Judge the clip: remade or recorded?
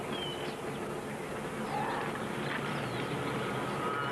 recorded